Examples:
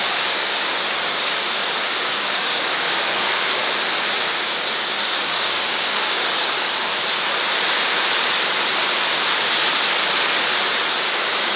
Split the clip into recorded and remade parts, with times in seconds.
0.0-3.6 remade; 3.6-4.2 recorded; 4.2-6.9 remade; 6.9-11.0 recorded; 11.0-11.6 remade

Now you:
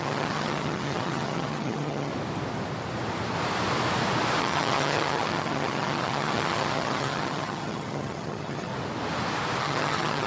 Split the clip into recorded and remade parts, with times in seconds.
0.0-2.1 remade; 2.1-4.4 recorded; 4.4-8.7 remade; 8.7-9.6 recorded; 9.6-10.3 remade

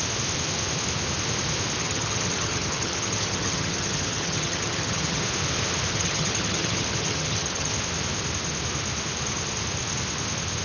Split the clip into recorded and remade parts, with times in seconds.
0.0-1.8 recorded; 1.8-5.2 remade; 5.2-5.9 recorded; 5.9-7.7 remade; 7.7-10.6 recorded

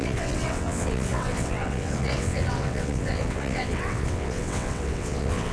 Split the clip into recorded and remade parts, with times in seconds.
0.0-5.5 remade

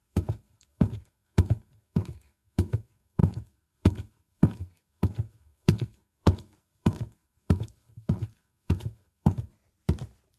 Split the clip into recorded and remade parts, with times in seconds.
0.0-9.5 remade; 9.5-10.4 recorded